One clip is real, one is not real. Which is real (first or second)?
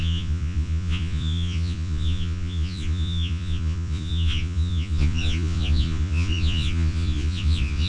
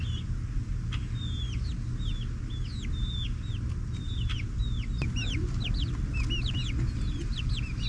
second